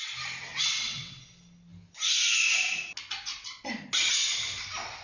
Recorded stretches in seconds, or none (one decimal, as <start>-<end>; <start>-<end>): 0.0-0.5; 1.2-5.0